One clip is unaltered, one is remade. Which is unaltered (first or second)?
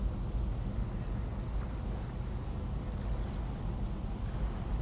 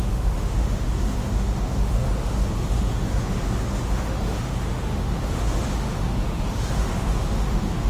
first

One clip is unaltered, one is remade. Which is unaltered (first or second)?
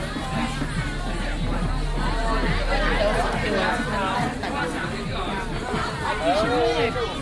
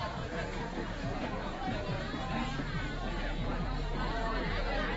first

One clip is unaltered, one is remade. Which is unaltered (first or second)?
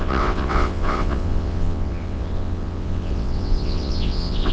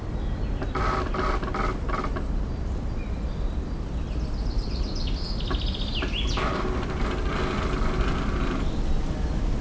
second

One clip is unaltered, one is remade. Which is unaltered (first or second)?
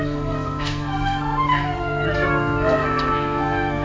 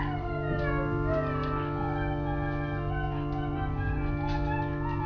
second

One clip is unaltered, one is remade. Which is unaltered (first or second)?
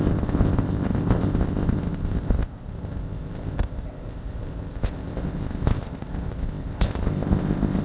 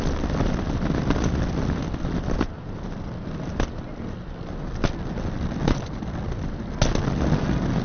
second